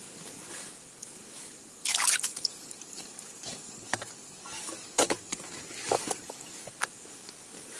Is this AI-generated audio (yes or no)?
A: yes